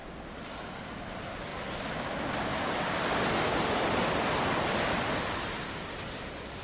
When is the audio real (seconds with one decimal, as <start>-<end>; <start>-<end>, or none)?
0.0-6.6